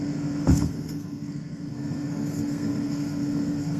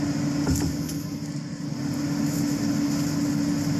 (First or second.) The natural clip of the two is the second